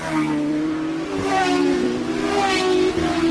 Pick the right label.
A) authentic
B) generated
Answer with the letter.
A